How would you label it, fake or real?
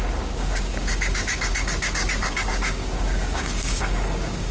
fake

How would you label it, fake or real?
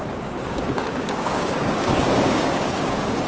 fake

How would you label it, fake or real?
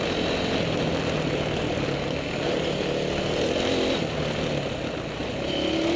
real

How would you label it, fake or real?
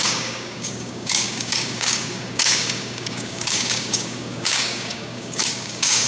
fake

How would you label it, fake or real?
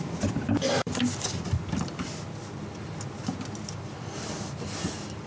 real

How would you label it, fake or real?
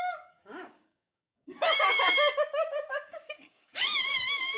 fake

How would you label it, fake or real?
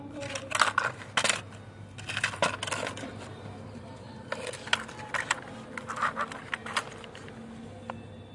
real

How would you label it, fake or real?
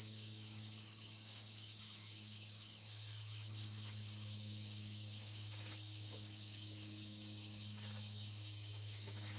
fake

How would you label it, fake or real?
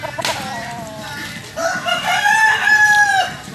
real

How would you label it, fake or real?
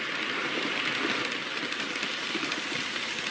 real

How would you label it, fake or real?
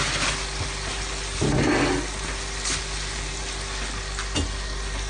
real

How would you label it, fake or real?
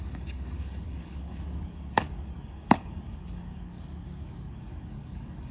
fake